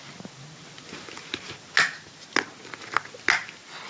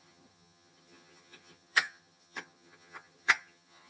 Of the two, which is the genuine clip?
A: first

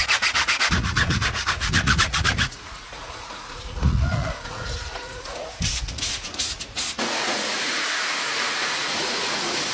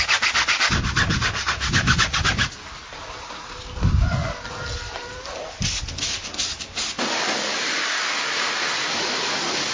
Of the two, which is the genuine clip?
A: second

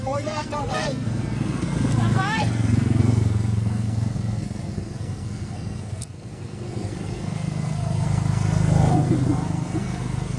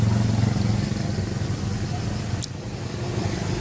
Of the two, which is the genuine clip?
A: second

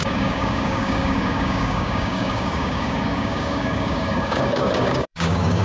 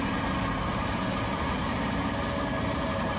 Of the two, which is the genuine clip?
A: second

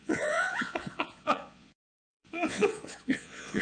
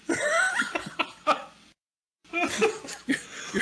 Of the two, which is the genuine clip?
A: second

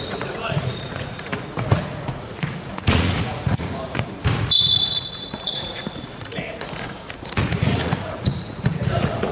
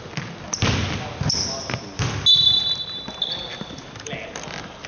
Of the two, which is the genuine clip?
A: second